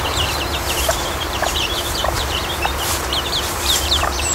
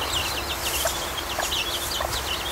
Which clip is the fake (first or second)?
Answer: first